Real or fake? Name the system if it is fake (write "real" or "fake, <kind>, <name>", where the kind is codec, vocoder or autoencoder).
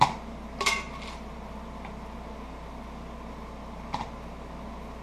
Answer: real